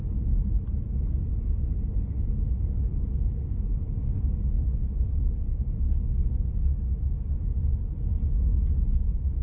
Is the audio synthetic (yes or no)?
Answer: no